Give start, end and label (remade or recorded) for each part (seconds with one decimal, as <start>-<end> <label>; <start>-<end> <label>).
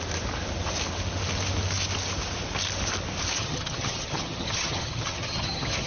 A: 0.0-3.4 recorded; 3.4-5.9 remade